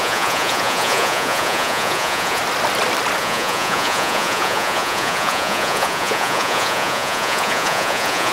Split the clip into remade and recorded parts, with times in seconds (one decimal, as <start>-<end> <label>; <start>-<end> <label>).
0.0-2.4 remade; 2.4-3.2 recorded; 3.2-8.3 remade